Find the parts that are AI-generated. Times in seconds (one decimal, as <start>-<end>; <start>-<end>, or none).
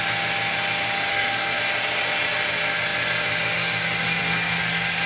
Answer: 1.1-1.6